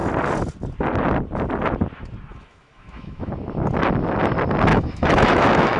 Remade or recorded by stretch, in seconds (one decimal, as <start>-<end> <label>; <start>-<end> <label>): 0.0-2.3 recorded; 2.3-3.3 remade; 3.3-4.7 recorded; 4.7-5.8 remade